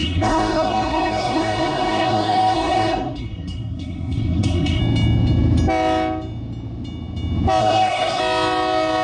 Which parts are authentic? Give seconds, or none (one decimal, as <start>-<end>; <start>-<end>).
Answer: 4.8-7.6; 8.2-9.0